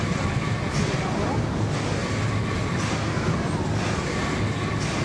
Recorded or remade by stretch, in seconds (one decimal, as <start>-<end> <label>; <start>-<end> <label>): 0.0-5.0 recorded